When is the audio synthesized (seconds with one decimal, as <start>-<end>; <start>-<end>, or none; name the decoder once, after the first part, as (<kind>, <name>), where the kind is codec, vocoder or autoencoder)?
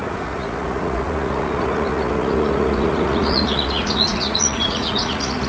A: 0.0-5.5 (vocoder, Vocos)